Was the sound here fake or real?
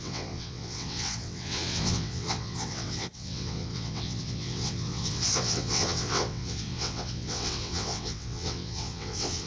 fake